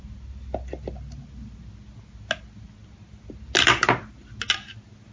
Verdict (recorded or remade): recorded